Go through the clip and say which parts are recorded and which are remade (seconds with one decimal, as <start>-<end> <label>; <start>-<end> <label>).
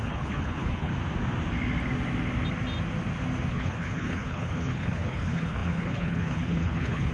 0.0-0.9 remade; 0.9-3.5 recorded; 3.5-7.1 remade